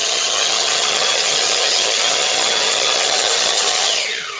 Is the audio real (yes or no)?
no